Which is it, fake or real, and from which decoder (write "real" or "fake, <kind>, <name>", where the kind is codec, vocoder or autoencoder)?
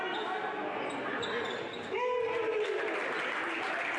real